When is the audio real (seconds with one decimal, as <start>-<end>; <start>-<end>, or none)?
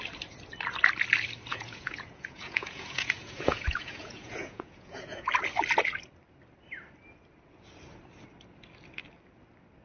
0.0-1.5; 5.3-9.8